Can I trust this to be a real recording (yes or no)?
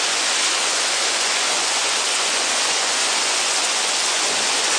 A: no